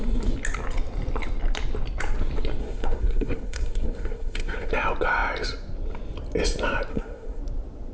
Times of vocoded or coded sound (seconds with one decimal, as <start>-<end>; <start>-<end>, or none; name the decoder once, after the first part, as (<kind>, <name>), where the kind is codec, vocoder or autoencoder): 2.6-4.7 (codec, SNAC); 6.9-7.4